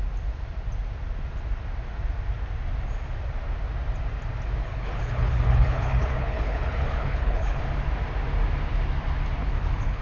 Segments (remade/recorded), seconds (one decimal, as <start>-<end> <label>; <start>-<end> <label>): 0.0-4.6 recorded; 4.6-7.6 remade; 7.6-9.4 recorded; 9.4-10.0 remade